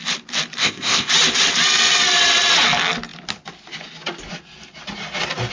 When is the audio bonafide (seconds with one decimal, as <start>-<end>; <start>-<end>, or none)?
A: 0.0-0.6; 1.1-5.5